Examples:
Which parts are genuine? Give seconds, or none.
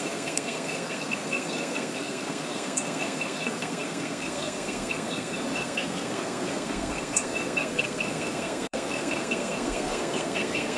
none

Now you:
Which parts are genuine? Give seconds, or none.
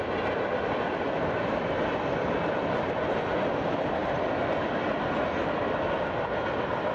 0.0-6.9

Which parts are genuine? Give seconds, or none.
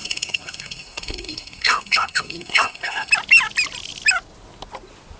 3.1-5.2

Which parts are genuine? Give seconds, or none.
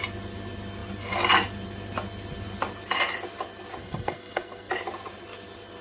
0.0-3.8; 4.7-5.8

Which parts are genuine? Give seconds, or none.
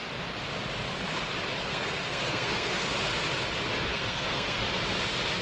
0.0-1.6; 2.9-3.9; 4.6-5.4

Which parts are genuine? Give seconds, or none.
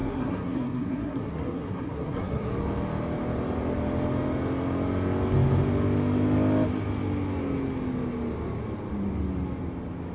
2.5-10.1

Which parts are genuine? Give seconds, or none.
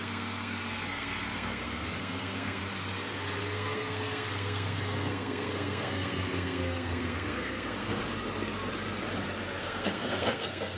2.6-3.4; 8.0-9.6